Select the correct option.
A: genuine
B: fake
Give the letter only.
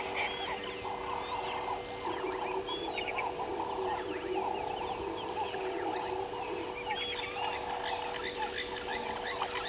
A